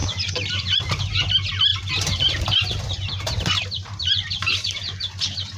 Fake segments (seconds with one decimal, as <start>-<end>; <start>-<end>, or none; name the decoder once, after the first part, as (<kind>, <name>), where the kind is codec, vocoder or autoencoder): 0.0-0.8 (vocoder, BigVGAN v2); 1.7-5.1